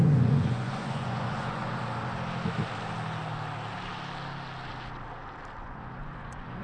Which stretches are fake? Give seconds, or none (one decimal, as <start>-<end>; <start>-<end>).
0.0-1.6; 5.6-6.6